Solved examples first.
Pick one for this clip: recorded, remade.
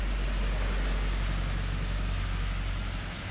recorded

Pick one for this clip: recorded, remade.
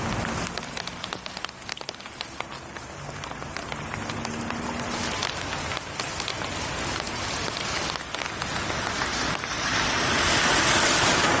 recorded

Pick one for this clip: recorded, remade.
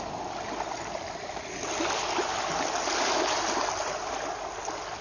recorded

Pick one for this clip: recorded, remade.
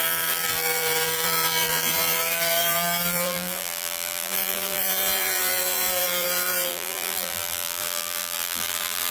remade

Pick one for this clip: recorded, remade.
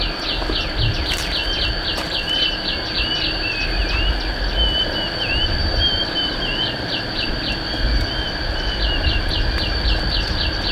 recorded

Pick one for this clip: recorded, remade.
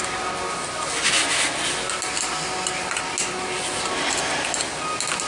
recorded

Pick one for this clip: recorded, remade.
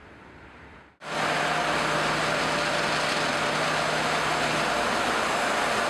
recorded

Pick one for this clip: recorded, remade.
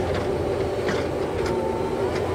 recorded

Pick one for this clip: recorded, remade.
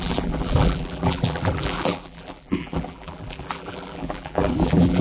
remade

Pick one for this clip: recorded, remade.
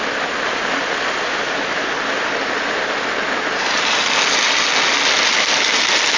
recorded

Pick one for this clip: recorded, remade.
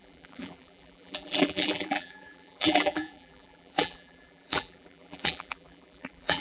remade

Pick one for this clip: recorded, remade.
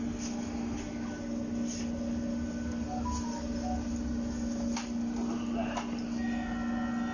recorded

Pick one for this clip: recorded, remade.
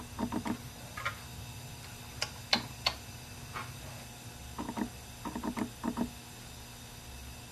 recorded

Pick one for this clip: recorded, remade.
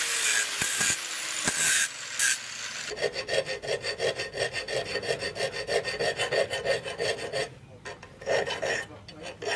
recorded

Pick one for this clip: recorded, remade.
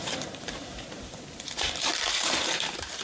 remade